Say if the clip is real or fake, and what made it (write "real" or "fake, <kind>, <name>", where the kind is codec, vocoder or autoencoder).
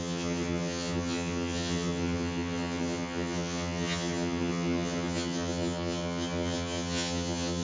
fake, vocoder, HiFi-GAN